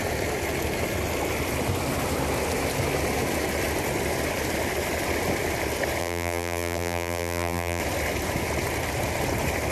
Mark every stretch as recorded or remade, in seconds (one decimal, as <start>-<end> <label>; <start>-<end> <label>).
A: 0.0-6.0 recorded; 6.0-7.8 remade; 7.8-9.7 recorded